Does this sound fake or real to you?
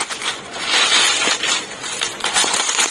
fake